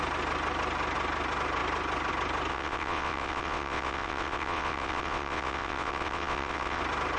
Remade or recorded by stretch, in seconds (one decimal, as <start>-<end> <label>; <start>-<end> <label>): 0.0-2.5 recorded; 2.5-6.8 remade; 6.8-7.2 recorded